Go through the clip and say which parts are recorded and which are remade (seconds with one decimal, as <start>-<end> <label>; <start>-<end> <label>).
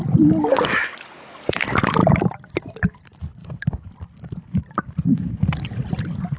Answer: 0.0-6.4 recorded